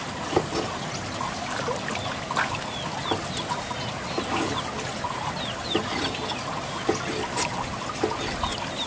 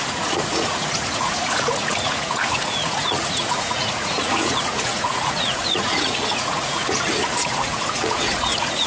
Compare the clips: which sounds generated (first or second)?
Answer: second